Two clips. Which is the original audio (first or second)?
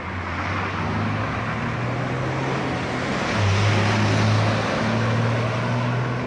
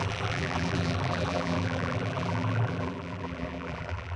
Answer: first